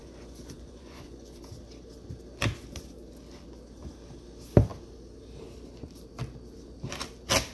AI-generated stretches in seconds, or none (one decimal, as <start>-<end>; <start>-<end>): 0.0-1.4